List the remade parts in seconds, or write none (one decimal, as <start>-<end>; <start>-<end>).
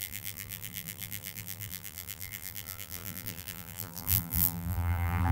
0.0-5.3